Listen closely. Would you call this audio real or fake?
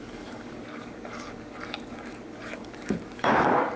fake